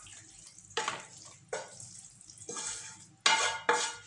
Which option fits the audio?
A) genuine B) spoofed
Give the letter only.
A